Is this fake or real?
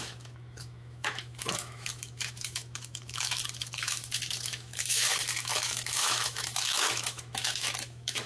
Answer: fake